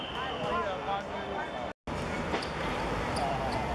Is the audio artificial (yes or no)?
no